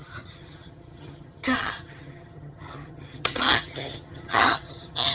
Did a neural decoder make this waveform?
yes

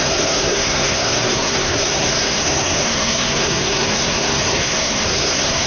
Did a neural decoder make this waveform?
yes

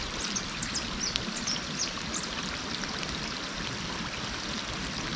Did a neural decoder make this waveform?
no